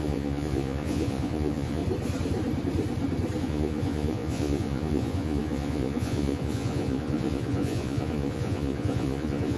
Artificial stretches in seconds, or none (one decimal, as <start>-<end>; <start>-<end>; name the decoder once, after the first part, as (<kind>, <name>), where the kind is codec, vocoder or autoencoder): 0.0-1.8 (vocoder, Vocos); 3.4-9.6